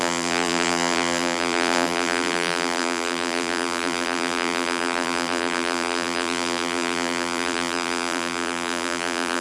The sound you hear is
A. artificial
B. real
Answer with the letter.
A